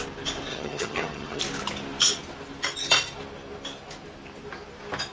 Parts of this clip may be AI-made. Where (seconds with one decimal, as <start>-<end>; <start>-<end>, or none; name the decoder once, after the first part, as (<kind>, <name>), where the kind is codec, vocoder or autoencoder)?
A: 0.5-1.4 (vocoder, HiFi-GAN)